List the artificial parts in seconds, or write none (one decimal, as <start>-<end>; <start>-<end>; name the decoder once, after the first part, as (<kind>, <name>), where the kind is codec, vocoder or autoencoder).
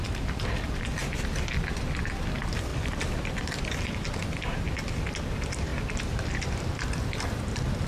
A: 1.0-2.0 (vocoder, BigVGAN v2); 2.7-3.7; 5.7-7.9